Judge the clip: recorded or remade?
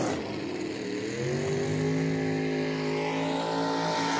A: recorded